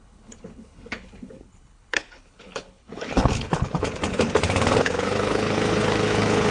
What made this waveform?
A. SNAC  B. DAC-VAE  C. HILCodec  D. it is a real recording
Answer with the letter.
C